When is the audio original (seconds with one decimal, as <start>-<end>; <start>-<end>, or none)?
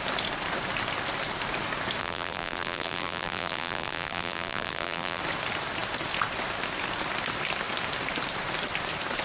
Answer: 0.0-2.0; 5.2-9.2